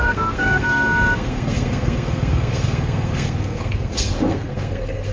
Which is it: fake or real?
fake